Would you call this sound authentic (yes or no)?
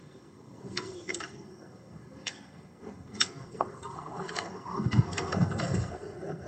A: no